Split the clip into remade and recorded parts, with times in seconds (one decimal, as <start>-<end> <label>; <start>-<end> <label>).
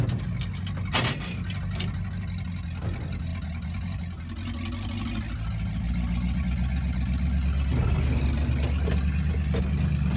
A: 0.0-10.2 recorded